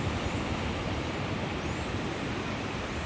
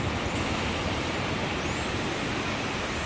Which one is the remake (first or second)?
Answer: first